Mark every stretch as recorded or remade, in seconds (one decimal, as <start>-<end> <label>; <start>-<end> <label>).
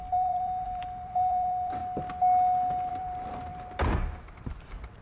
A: 0.0-1.8 remade; 1.8-2.9 recorded; 2.9-3.5 remade; 3.5-4.3 recorded; 4.3-5.0 remade